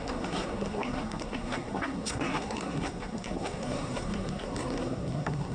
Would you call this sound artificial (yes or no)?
yes